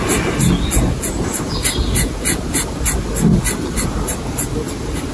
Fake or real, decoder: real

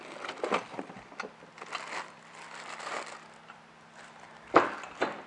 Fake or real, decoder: real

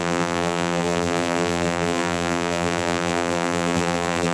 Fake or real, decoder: fake, vocoder, BigVGAN v2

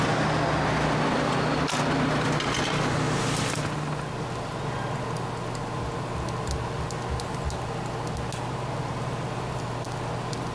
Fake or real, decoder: real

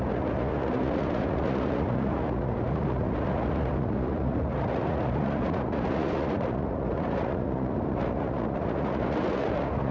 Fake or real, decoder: fake, vocoder, Vocos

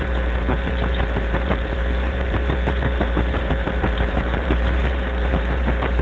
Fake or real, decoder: fake, vocoder, BigVGAN v2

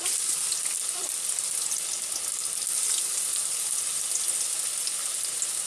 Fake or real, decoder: real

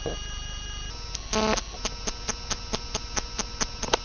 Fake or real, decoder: real